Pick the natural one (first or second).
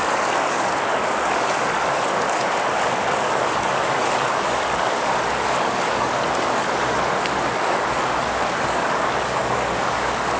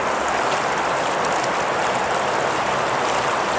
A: second